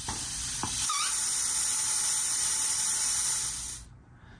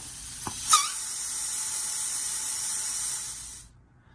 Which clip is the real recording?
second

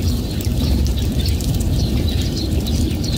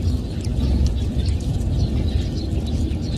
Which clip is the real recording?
second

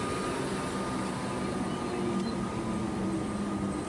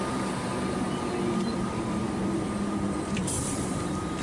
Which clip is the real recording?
first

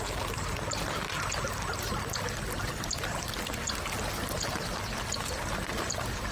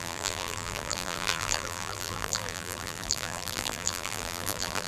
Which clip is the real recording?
first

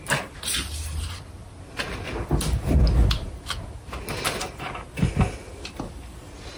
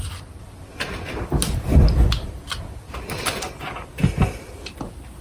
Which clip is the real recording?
first